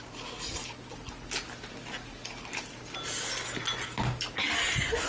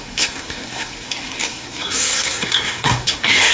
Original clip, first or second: first